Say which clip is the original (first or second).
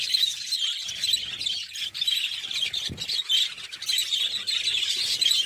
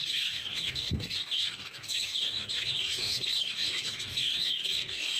first